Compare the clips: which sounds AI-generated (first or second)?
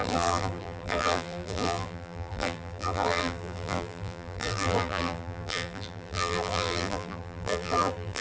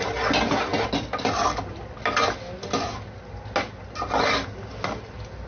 first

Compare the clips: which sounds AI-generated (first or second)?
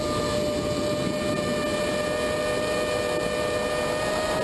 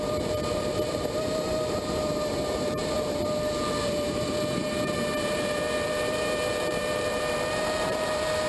second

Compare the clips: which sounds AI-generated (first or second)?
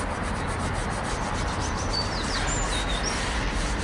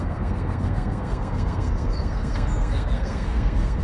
second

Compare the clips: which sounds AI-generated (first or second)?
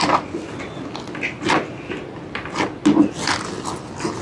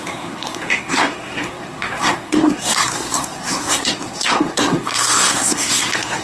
second